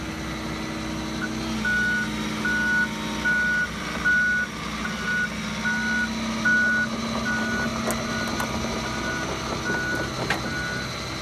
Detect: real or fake real